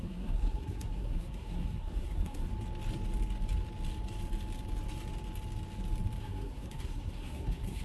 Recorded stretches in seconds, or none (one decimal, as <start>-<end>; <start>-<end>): 2.5-6.2